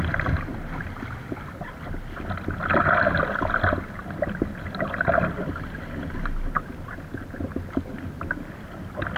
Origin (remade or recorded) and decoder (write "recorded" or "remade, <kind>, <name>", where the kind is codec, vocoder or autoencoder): recorded